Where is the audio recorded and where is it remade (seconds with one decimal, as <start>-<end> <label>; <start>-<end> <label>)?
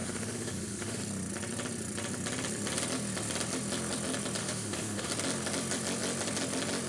0.0-1.0 remade; 1.0-4.4 recorded; 4.4-5.1 remade; 5.1-6.9 recorded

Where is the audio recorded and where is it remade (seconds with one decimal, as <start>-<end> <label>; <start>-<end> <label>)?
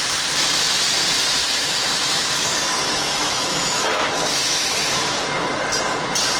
0.0-1.4 recorded; 1.4-5.2 remade; 5.2-6.4 recorded